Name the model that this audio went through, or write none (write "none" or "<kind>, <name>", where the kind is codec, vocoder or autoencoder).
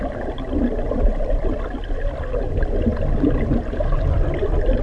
none